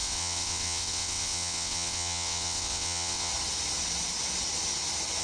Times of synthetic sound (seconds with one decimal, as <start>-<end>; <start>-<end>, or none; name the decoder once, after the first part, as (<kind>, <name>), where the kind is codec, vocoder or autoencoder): 0.0-3.3 (vocoder, WaveNeXt)